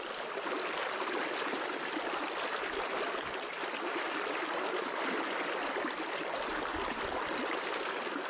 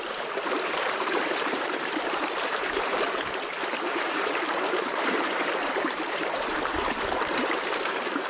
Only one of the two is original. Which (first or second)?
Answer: first